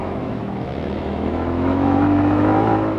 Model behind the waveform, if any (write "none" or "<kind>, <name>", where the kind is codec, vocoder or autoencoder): autoencoder, DAC-VAE